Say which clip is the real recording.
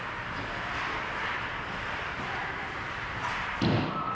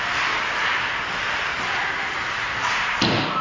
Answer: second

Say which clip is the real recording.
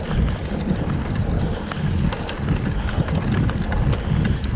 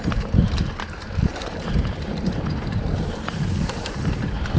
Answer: first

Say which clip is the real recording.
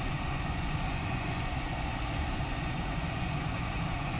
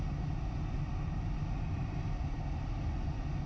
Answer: second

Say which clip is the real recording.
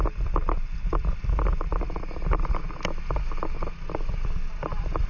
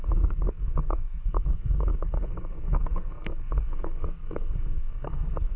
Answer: first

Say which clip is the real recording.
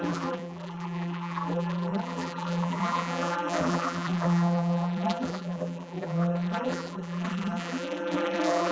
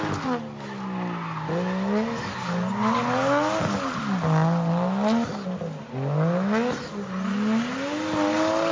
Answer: second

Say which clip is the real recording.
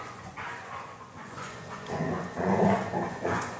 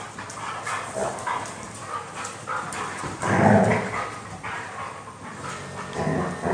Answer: second